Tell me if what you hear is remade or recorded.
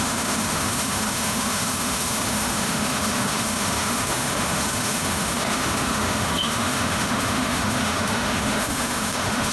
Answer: remade